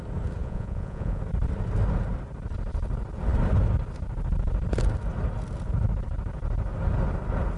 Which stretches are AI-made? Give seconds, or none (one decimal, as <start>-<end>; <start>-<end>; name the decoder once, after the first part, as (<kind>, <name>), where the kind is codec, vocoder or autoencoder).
0.4-1.2 (vocoder, Vocos)